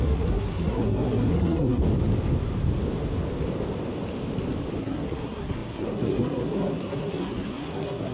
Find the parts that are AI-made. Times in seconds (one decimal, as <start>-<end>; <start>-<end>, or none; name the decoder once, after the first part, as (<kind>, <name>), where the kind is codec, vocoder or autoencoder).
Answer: 0.0-1.8 (codec, SNAC); 4.8-8.1